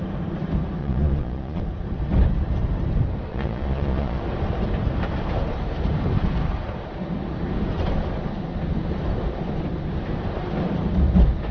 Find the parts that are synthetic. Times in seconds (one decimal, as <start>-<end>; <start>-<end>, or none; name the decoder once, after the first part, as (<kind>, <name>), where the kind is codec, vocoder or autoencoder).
0.8-1.6 (vocoder, Vocos); 3.3-4.2

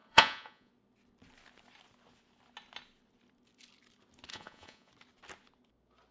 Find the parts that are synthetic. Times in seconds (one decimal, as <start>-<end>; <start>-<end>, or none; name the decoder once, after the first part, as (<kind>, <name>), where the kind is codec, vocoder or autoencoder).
0.0-0.7 (vocoder, Vocos); 4.3-4.9

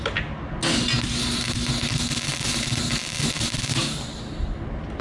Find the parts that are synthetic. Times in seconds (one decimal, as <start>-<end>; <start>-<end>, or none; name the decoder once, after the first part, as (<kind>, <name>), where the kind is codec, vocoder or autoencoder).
none

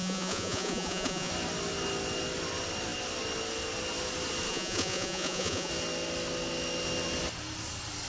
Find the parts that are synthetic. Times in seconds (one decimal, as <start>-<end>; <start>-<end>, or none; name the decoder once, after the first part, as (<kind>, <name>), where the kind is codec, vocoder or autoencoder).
0.0-1.3 (vocoder, Vocos); 4.5-5.7

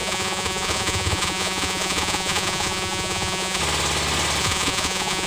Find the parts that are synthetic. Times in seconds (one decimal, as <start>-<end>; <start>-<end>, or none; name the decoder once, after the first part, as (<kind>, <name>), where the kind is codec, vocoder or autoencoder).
0.0-3.6 (vocoder, Vocos); 4.4-5.3

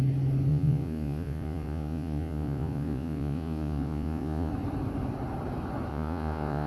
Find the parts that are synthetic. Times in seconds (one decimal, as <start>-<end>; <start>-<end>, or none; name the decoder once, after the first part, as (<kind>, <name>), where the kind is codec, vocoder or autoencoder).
0.5-4.5 (vocoder, Vocos); 5.9-6.7

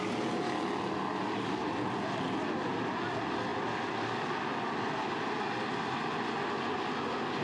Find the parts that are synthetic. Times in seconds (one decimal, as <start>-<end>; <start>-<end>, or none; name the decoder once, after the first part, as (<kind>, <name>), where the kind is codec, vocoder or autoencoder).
none